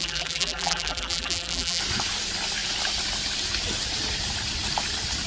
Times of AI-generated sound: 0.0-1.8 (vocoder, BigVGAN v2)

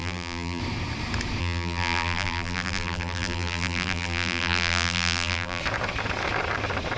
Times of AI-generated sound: 0.0-0.6 (vocoder, BigVGAN v2); 1.4-5.6

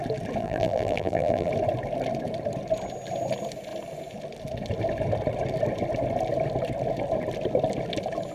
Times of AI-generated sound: 0.4-1.5 (vocoder, BigVGAN v2)

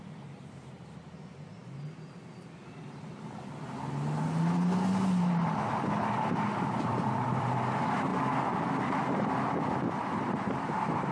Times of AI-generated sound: 0.0-1.6 (vocoder, BigVGAN v2); 5.7-8.1; 10.7-11.1

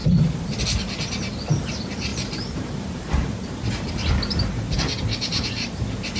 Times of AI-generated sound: 2.1-5.8 (vocoder, BigVGAN v2)

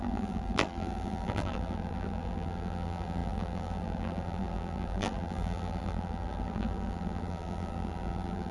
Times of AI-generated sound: 0.0-8.5 (vocoder, BigVGAN v2)

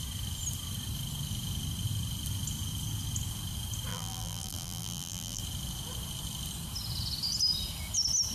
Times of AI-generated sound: 3.9-5.4 (vocoder, BigVGAN v2)

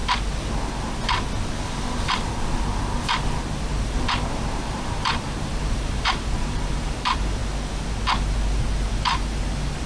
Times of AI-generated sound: 4.3-7.4 (vocoder, BigVGAN v2); 8.9-9.9